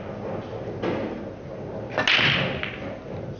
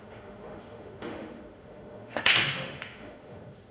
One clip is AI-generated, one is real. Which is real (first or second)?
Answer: first